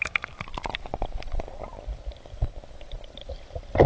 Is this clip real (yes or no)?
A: no